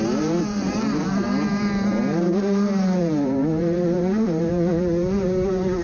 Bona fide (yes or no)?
no